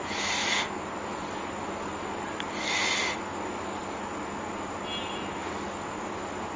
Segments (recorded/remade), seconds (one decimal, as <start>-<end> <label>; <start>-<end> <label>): 0.0-6.6 recorded

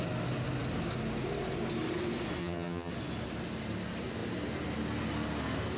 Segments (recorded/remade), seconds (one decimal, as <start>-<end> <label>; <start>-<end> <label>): 0.0-2.4 recorded; 2.4-2.9 remade; 2.9-5.8 recorded

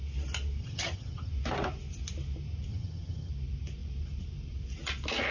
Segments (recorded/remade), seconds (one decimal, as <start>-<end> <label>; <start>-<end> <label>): 0.0-0.6 recorded; 0.6-1.3 remade; 1.3-2.7 recorded; 2.7-3.3 remade; 3.3-5.3 recorded